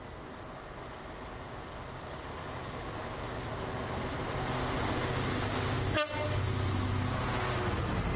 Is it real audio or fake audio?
real